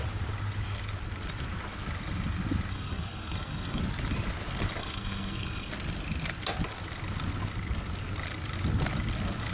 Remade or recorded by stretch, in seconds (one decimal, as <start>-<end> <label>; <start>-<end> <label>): 0.0-2.7 recorded; 2.7-3.8 remade; 3.8-4.8 recorded; 4.8-5.7 remade; 5.7-9.5 recorded